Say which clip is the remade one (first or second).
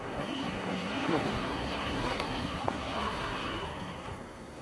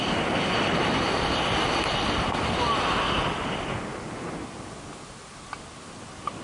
first